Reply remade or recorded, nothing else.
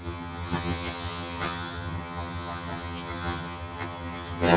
remade